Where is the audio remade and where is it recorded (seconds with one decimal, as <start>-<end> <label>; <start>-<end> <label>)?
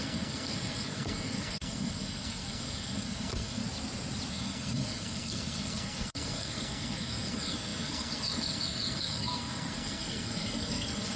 0.0-3.6 remade; 3.6-4.3 recorded; 4.3-11.2 remade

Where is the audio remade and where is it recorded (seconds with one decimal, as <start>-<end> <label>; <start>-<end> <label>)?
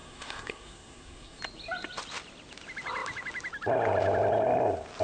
0.0-1.4 remade; 1.4-5.0 recorded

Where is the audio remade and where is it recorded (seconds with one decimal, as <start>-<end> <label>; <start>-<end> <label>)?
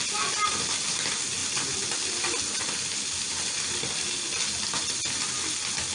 0.0-5.9 recorded